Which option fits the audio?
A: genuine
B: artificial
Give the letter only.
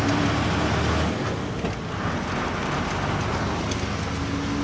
A